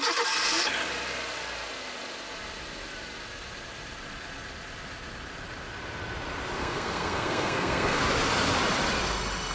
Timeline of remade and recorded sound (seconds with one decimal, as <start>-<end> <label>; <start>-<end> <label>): 0.0-6.6 recorded; 6.6-8.0 remade; 8.0-9.5 recorded